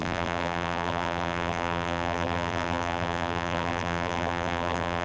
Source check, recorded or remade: remade